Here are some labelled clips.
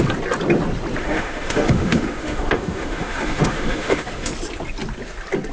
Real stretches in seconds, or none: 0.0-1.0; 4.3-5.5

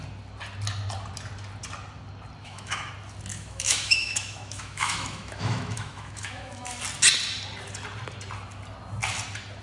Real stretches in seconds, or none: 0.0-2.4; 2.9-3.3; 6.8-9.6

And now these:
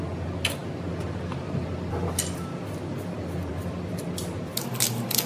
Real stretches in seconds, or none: 0.0-5.3